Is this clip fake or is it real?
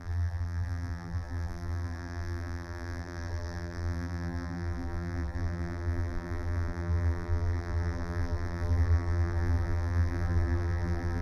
fake